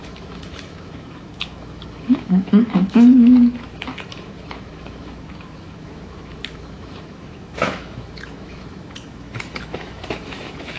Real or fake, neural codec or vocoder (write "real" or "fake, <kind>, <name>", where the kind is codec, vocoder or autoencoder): fake, autoencoder, DAC-VAE